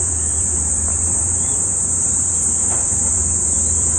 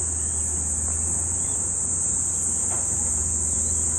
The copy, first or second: first